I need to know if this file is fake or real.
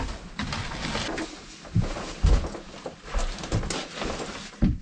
real